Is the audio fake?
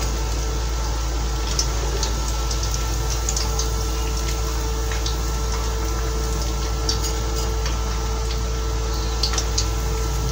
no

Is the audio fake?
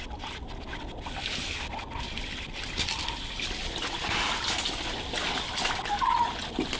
no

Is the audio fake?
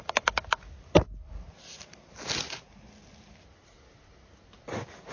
no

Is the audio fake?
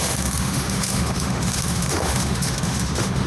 yes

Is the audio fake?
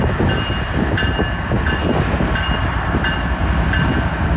no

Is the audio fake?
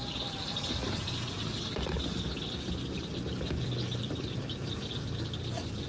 no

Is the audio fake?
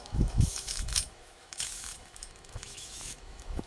yes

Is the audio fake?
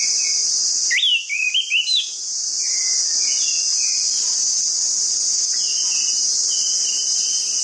no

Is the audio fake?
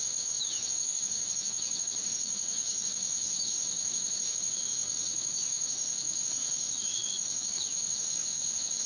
yes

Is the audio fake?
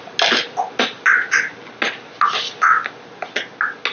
no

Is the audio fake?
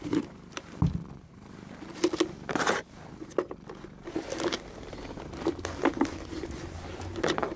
no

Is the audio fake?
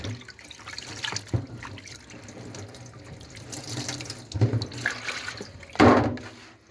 no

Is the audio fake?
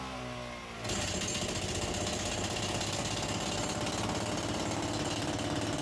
no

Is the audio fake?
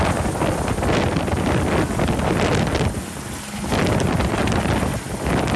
no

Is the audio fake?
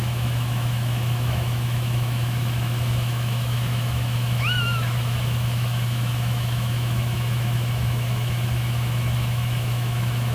yes